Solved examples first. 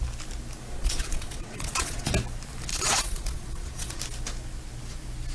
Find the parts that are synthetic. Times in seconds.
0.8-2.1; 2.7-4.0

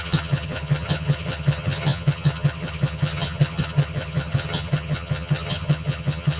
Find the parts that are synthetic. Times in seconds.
0.0-6.4